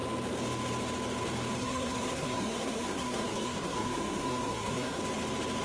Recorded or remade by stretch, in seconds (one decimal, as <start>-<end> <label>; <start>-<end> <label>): 0.0-1.6 recorded; 1.6-5.0 remade; 5.0-5.6 recorded